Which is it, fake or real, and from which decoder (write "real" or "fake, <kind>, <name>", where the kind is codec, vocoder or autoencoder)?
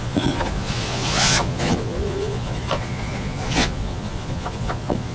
fake, vocoder, Vocos